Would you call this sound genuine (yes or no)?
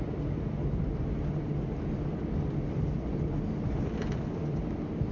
yes